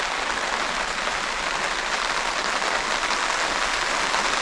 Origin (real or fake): real